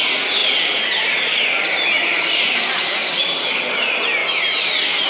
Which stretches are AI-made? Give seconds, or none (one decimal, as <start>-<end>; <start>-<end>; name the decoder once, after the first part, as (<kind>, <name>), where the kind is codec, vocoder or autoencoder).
0.4-3.5 (vocoder, BigVGAN v2)